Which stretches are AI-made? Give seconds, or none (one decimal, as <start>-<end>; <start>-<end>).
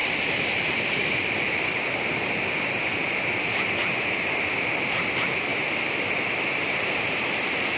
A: 0.0-5.5; 7.0-7.8